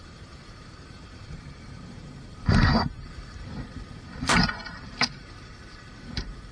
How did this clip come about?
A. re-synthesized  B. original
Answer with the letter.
A